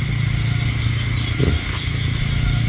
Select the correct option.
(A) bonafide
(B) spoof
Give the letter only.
A